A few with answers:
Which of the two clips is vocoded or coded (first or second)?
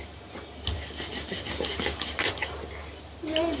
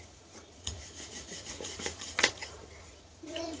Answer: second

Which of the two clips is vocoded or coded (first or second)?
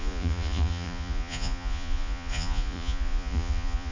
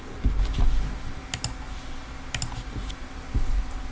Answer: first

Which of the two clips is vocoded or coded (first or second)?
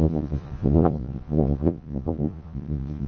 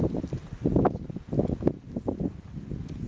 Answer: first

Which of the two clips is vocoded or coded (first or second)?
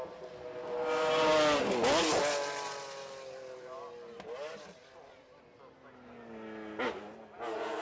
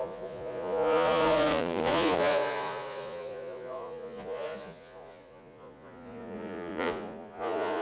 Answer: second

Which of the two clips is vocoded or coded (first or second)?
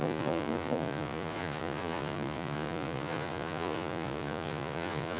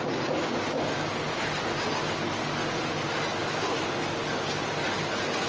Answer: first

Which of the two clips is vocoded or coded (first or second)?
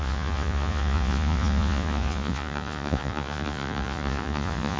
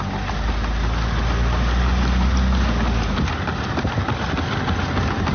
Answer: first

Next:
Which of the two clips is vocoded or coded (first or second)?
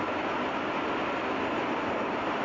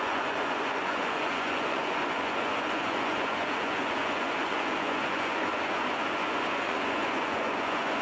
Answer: second